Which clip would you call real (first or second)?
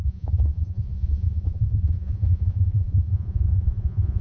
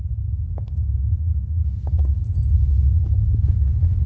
second